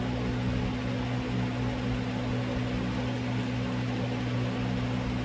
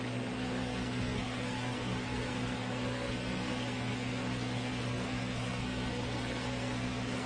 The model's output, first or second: second